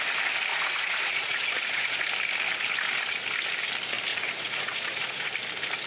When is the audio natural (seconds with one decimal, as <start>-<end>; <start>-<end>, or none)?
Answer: 0.0-0.5; 2.0-4.1; 5.3-5.9